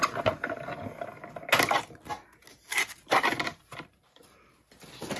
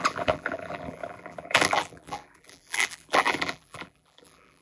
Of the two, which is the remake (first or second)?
second